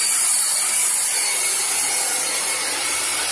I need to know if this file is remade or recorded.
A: recorded